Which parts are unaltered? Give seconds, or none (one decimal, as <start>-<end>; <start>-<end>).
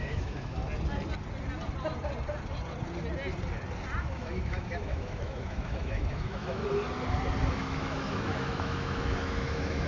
0.6-4.0; 6.6-7.5